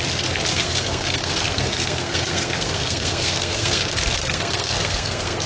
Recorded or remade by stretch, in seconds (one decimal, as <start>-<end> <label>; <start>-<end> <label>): 0.0-0.5 recorded; 0.5-3.8 remade; 3.8-4.2 recorded; 4.2-5.5 remade